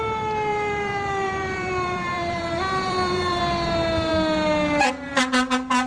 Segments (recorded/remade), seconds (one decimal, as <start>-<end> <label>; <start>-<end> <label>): 0.0-0.5 recorded; 0.5-3.4 remade; 3.4-5.9 recorded